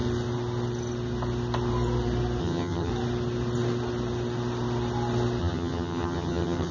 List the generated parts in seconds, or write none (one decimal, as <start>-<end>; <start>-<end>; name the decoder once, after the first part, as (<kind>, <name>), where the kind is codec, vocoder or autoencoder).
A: 2.4-2.9 (vocoder, HiFi-GAN); 5.4-6.7